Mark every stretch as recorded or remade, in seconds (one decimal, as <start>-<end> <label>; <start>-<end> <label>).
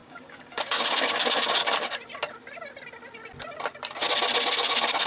0.0-1.6 remade; 1.6-5.1 recorded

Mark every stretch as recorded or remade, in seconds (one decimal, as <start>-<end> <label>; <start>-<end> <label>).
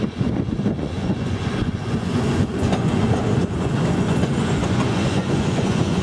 0.0-6.0 remade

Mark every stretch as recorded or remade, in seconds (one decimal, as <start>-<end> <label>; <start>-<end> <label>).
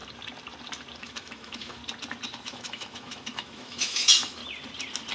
0.0-1.0 recorded; 1.0-1.8 remade; 1.8-2.4 recorded; 2.4-4.4 remade; 4.4-5.1 recorded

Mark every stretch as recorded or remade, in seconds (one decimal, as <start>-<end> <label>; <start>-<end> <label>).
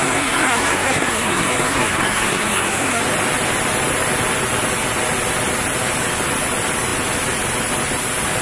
0.0-3.0 remade; 3.0-8.4 recorded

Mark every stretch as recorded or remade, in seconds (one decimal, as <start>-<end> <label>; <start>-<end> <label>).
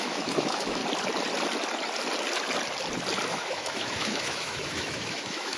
0.0-0.8 remade; 0.8-3.3 recorded; 3.3-5.6 remade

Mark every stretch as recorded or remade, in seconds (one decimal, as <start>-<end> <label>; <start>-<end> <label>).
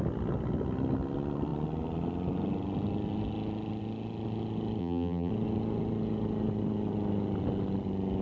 0.0-4.8 recorded; 4.8-5.3 remade; 5.3-8.2 recorded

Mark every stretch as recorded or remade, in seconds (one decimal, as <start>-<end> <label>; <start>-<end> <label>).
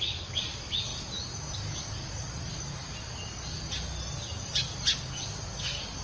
0.0-0.9 remade; 0.9-1.5 recorded; 1.5-2.5 remade; 2.5-4.9 recorded; 4.9-6.0 remade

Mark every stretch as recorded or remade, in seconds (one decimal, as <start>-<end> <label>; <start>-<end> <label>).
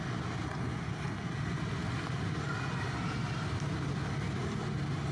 0.0-5.1 recorded